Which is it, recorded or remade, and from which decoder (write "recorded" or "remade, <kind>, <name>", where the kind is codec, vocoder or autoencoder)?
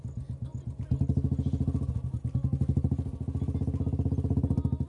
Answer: recorded